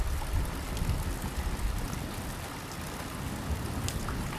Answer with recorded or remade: recorded